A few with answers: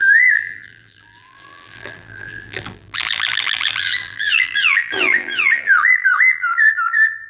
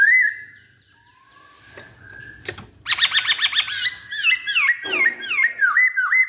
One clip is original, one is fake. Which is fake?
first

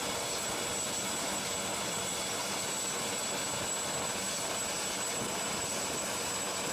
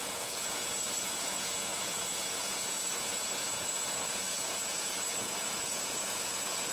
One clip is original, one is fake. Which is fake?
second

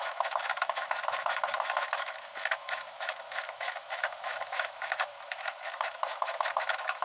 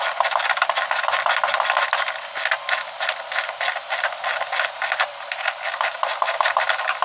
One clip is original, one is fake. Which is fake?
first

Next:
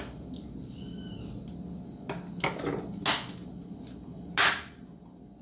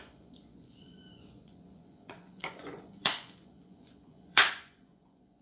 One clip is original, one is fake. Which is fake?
second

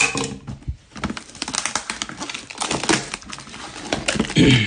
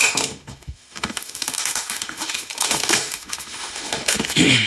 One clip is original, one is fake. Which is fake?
second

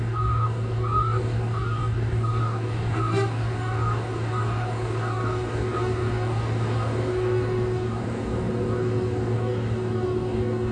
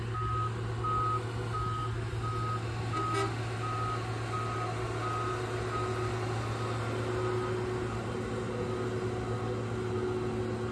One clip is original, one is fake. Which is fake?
first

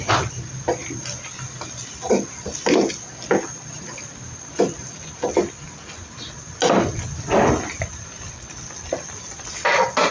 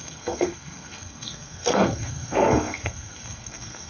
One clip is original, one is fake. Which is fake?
second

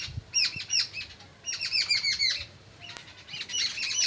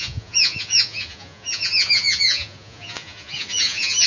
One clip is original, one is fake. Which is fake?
second